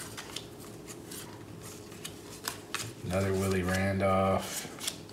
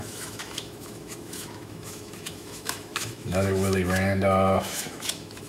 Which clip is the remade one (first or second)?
second